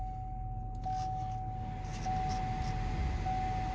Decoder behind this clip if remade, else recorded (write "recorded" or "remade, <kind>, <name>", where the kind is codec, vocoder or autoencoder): recorded